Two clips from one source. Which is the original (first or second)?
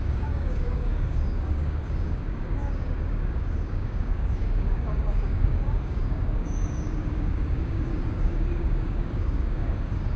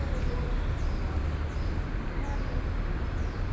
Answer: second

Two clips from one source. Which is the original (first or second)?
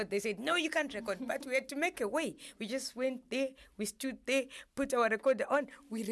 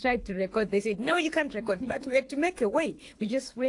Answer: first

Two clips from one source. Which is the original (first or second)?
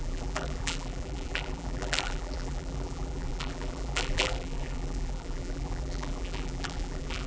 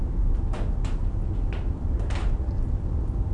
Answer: second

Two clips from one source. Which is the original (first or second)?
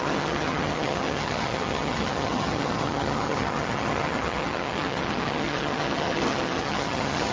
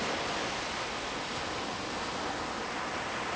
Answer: second